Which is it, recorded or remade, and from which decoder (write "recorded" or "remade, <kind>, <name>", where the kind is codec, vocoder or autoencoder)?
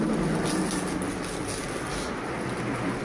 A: recorded